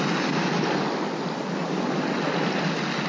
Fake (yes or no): no